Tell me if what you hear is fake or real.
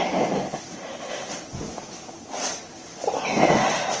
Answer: real